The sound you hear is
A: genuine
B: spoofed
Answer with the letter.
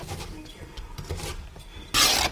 A